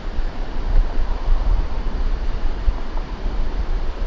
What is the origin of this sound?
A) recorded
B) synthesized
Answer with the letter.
B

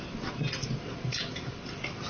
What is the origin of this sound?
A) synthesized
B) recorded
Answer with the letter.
B